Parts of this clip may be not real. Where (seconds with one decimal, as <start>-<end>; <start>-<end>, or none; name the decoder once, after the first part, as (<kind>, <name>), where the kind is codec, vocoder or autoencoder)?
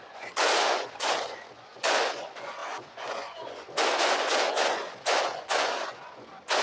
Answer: 0.0-6.6 (vocoder, Vocos)